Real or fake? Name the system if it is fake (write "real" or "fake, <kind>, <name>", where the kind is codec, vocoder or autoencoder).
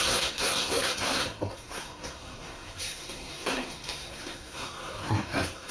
fake, codec, SNAC